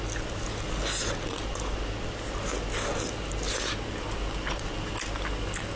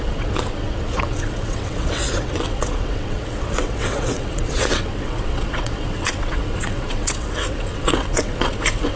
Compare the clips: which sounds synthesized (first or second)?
second